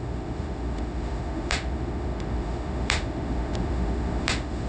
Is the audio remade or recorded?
remade